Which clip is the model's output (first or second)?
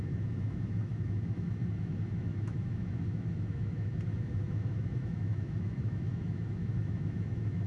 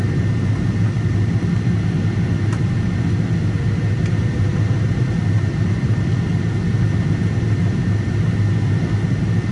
first